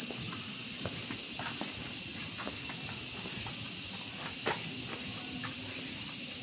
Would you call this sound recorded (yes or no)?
no